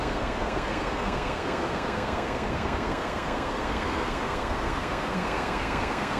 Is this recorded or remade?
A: remade